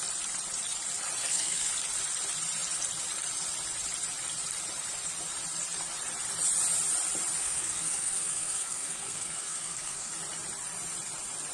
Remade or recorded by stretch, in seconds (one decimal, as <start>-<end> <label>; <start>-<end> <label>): 0.0-1.2 recorded; 1.2-1.7 remade; 1.7-7.4 recorded; 7.4-10.1 remade; 10.1-11.5 recorded